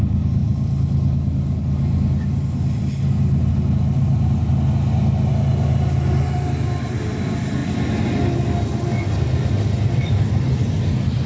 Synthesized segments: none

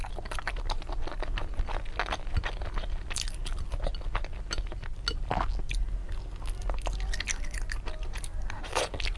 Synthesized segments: none

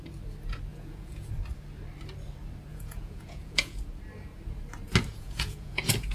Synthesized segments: 0.7-1.3 (vocoder, Vocos); 2.7-3.8; 5.1-6.1

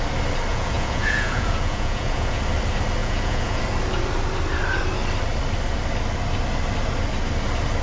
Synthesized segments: 0.5-2.4 (vocoder, Vocos); 3.0-3.6

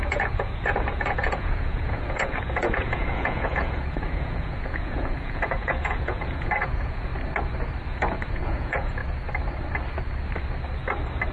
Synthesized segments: 0.0-7.1 (vocoder, Vocos); 7.9-9.0

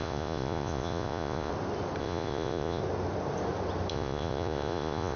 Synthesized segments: 0.0-1.5 (vocoder, Vocos); 2.0-2.8; 3.9-5.2